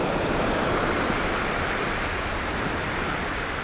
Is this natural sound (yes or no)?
yes